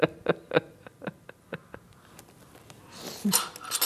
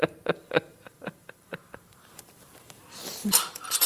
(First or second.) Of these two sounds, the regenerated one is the second